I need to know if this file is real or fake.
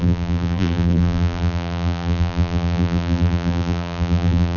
fake